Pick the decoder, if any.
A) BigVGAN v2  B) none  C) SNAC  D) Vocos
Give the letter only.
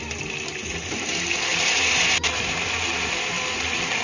A